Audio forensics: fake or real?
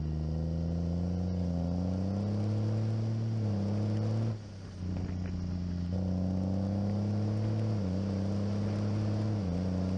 real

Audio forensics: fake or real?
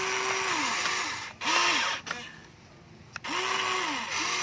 real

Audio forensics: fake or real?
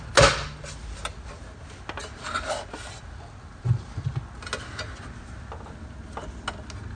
real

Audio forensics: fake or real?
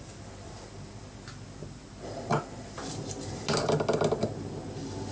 real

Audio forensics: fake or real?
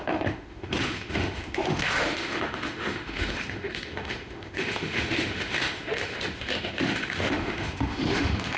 fake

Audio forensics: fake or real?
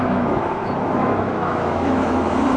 fake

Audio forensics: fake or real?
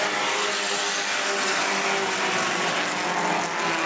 real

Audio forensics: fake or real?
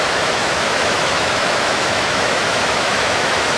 fake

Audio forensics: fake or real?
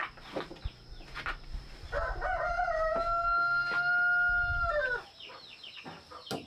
real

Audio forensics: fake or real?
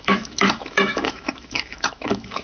fake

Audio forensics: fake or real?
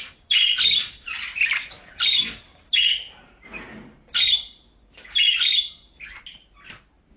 real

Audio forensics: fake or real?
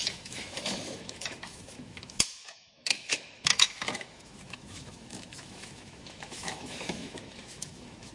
fake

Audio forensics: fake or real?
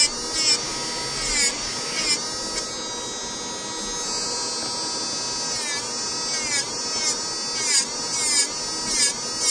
real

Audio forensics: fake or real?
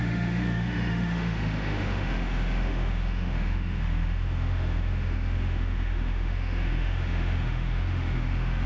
fake